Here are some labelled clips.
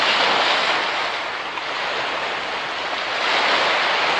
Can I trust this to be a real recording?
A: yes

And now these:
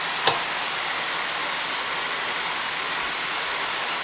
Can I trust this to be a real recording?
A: yes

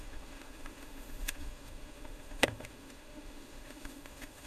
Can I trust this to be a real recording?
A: no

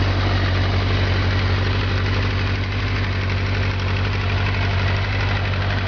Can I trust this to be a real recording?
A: yes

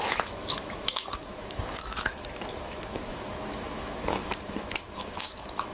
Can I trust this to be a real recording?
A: no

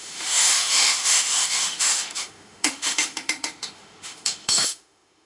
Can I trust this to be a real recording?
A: no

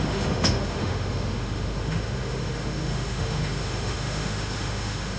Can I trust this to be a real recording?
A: no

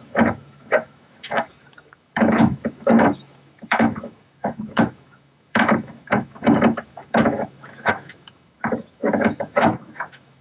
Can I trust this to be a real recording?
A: no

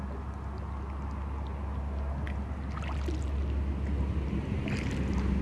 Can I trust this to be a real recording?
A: yes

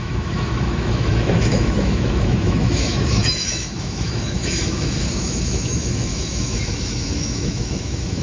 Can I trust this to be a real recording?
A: no